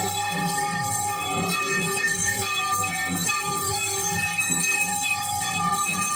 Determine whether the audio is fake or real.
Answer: fake